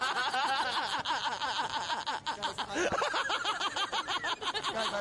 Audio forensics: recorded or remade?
recorded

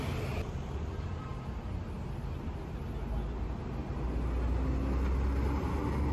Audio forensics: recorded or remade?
recorded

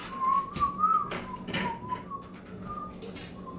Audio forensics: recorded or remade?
recorded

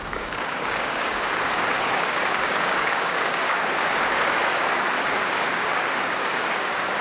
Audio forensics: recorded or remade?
remade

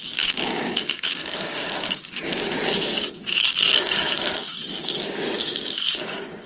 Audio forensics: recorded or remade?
remade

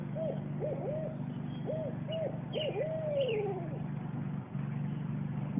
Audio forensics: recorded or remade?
recorded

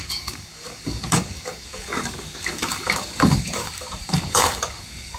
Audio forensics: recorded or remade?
remade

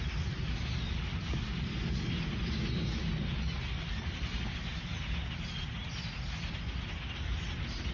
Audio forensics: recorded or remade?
recorded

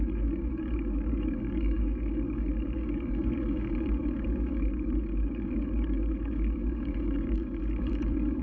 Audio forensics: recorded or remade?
remade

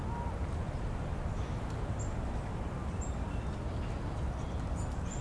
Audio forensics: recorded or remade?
recorded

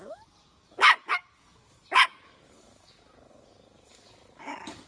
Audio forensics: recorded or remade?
remade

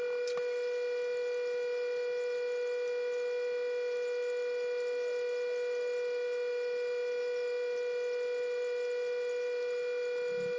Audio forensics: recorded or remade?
recorded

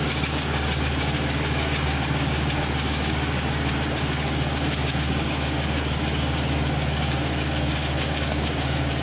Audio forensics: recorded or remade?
remade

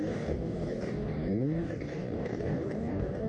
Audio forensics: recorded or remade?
remade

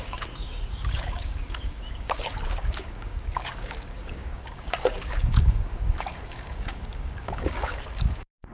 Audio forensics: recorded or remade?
remade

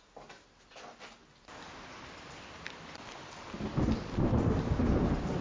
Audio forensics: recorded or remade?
recorded